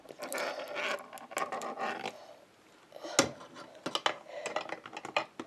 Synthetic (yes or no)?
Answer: no